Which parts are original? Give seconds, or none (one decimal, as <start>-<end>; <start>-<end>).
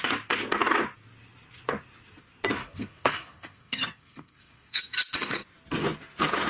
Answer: 0.0-2.6; 4.8-6.5